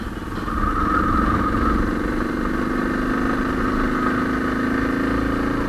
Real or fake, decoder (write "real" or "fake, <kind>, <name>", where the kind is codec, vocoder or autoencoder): real